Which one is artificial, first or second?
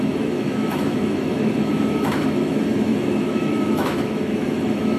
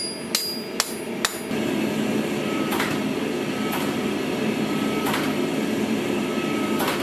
first